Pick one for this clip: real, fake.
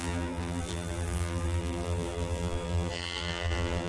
fake